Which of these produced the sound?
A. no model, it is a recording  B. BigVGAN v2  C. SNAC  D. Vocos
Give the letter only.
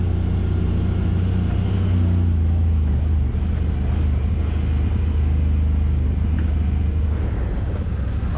A